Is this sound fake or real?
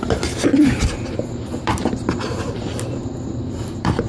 fake